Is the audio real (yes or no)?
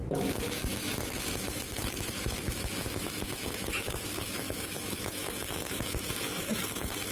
no